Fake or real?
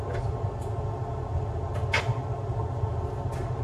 real